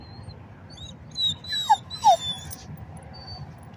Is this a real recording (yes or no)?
yes